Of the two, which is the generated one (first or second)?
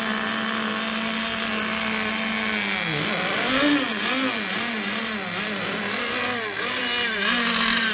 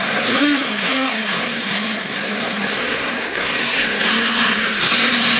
second